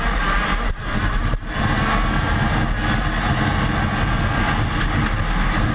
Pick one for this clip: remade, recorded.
recorded